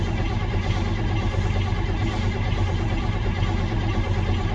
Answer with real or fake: real